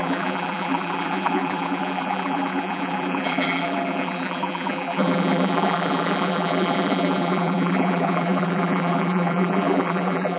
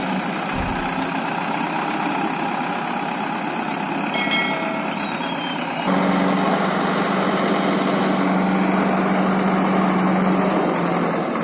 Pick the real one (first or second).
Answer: second